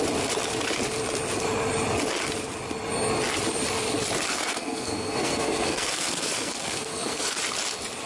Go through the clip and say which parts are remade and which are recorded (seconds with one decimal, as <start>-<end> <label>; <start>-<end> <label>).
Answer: 0.0-4.3 recorded; 4.3-7.4 remade; 7.4-8.1 recorded